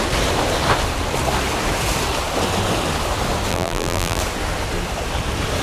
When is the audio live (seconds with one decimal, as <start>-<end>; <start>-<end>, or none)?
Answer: 0.0-3.5; 4.2-5.6